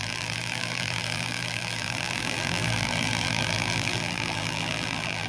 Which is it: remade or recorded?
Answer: remade